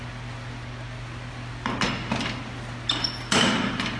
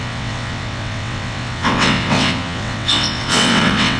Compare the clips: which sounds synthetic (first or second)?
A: second